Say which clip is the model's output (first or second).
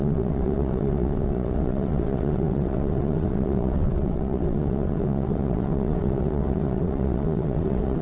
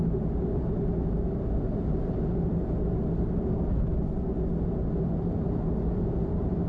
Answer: first